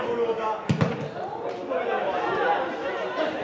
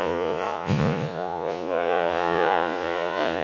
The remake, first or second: second